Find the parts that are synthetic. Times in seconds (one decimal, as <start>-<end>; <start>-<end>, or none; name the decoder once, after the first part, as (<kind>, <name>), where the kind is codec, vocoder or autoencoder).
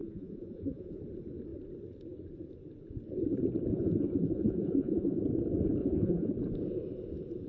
0.0-1.0 (vocoder, Vocos); 3.7-5.2; 5.8-6.3